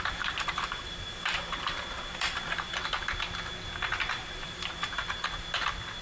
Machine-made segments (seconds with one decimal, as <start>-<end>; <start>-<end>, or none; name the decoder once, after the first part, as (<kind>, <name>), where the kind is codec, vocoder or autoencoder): 0.0-2.7 (vocoder, BigVGAN v2); 4.1-4.8